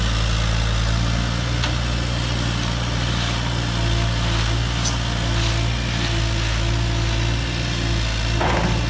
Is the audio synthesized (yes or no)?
no